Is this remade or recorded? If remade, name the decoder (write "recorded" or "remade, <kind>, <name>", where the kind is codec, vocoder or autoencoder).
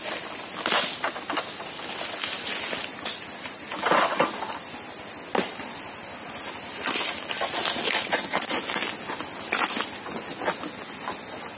recorded